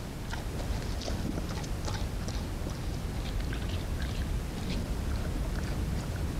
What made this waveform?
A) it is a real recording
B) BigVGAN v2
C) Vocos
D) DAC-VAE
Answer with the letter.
A